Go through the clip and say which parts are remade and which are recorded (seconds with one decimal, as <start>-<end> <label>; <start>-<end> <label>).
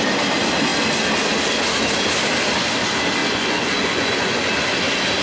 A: 0.0-3.2 recorded; 3.2-4.5 remade; 4.5-5.2 recorded